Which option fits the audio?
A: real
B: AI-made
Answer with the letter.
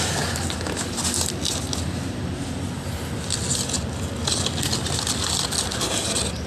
A